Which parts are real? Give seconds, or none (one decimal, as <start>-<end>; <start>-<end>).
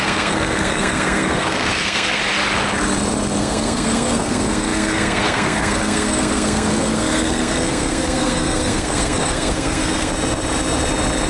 2.2-3.4; 10.1-11.3